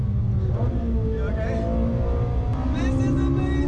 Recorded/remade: recorded